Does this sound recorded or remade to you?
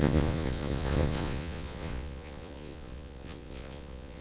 remade